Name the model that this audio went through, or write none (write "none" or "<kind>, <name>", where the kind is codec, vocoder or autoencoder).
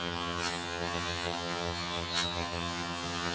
vocoder, HiFi-GAN